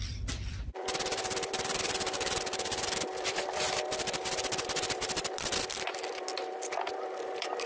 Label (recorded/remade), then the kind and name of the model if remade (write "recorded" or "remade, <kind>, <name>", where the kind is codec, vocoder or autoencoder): remade, vocoder, BigVGAN v2